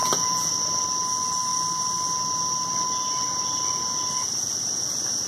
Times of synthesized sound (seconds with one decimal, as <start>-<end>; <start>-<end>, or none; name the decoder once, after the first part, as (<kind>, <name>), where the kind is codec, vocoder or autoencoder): 0.0-0.5 (vocoder, Vocos)